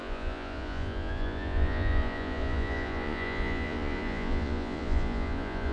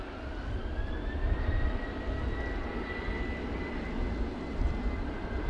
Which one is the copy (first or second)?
first